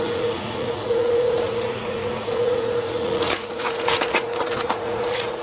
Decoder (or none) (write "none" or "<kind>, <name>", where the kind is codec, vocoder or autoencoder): vocoder, Vocos